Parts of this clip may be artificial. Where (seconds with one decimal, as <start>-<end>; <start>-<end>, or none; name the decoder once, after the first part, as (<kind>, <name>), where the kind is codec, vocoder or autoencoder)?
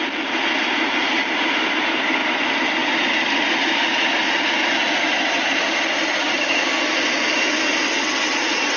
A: 6.2-6.7 (codec, DAC)